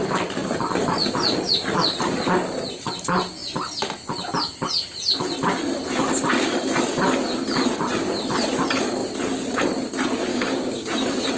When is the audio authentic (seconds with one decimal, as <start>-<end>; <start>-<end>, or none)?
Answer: 0.0-10.3; 10.9-11.4

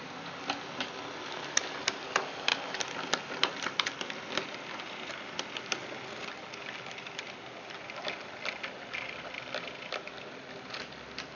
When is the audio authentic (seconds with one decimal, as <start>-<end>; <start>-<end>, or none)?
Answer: 0.0-11.4

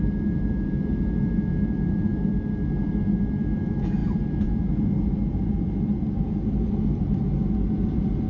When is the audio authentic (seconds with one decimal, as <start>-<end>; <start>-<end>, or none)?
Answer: 0.0-8.3

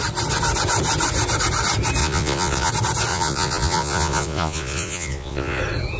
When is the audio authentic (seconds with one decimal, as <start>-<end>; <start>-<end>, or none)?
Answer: 0.0-2.0; 2.7-3.1; 5.6-6.0

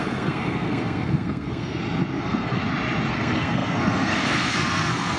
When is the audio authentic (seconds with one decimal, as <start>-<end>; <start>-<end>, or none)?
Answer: 1.7-2.2; 2.6-3.1

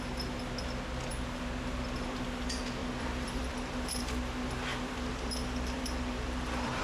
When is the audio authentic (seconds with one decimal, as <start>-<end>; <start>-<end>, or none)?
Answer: 0.0-2.8; 4.0-4.7

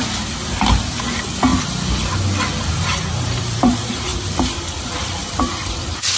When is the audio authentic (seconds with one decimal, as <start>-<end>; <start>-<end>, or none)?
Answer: 1.5-2.7